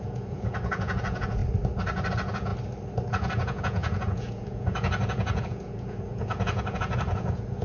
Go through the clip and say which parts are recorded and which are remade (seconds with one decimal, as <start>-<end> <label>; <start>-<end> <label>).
0.0-1.4 remade; 1.4-2.1 recorded; 2.1-2.5 remade; 2.5-3.1 recorded; 3.1-7.6 remade